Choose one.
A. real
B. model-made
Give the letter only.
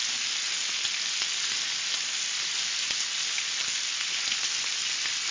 A